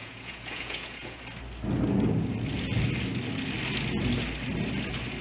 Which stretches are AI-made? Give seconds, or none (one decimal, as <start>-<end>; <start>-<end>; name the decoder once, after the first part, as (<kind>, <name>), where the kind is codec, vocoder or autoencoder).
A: 0.0-1.2 (vocoder, Vocos)